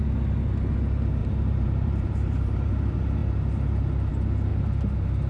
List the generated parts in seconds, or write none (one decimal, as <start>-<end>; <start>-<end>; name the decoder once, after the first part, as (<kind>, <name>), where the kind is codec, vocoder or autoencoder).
1.2-2.7 (vocoder, BigVGAN v2)